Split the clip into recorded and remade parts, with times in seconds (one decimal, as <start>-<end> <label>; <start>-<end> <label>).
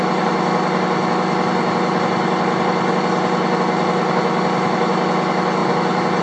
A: 0.0-6.2 recorded